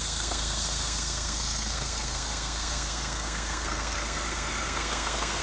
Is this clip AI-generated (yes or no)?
yes